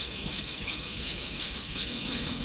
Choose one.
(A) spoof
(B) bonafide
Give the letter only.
A